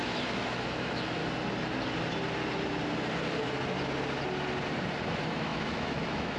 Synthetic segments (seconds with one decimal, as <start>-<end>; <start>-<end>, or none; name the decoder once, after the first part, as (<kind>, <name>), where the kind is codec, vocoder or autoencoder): 0.0-1.2 (autoencoder, DAC-VAE); 5.0-6.4